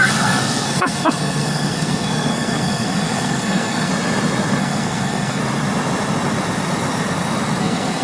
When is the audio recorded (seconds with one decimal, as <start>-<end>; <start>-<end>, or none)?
3.9-4.6; 5.4-7.6